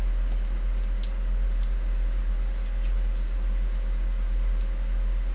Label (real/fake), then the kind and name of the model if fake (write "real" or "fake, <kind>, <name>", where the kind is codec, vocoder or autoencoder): real